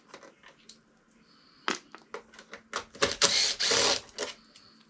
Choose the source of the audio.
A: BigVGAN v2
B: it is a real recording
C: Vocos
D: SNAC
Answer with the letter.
B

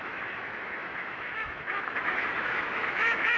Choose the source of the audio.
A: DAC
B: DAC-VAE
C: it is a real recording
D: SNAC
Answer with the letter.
B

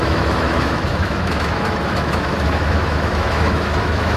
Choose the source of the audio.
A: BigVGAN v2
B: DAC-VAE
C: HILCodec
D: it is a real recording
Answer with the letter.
B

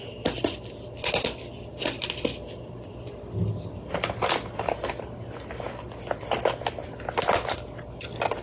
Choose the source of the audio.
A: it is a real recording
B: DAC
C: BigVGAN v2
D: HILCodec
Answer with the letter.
A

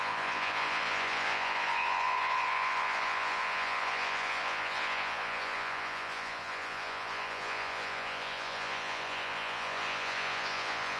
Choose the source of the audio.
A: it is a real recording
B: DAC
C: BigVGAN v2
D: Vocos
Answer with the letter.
D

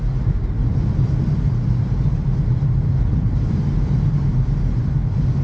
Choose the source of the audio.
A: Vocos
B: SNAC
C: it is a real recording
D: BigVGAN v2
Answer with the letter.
C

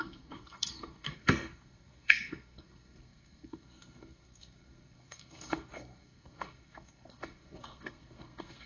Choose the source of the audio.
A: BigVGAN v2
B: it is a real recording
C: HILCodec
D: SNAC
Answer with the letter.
D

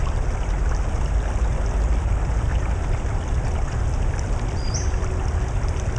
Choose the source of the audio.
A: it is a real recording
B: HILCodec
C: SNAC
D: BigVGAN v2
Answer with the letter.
A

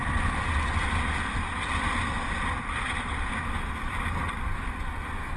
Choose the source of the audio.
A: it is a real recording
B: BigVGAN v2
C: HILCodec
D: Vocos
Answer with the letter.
A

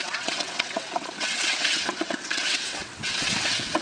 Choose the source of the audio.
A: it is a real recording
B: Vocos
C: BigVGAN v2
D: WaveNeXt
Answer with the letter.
D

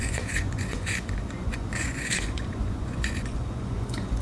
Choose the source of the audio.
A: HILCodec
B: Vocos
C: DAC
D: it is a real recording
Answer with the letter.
B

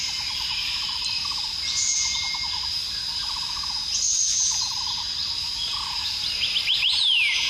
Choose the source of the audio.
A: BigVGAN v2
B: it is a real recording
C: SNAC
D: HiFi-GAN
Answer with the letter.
A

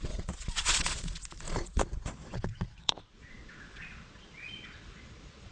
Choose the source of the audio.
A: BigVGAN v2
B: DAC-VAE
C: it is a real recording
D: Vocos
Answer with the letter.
D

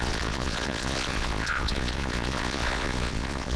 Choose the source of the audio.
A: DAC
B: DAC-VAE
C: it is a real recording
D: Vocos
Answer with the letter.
D